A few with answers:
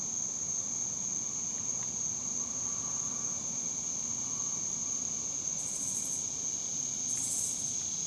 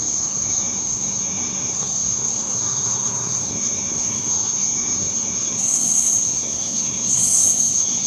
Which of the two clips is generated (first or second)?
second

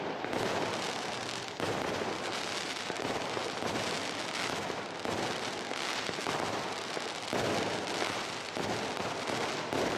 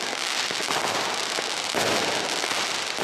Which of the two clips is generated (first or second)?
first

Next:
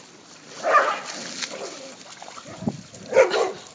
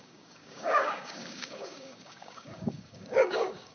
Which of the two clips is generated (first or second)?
second